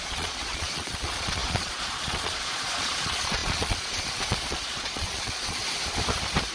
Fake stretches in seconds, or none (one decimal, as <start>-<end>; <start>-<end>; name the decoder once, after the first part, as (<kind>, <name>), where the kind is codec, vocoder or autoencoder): 0.0-5.6 (vocoder, Vocos)